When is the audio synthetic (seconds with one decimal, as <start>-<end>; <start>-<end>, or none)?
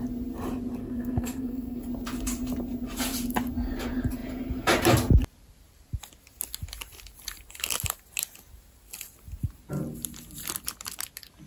0.8-1.8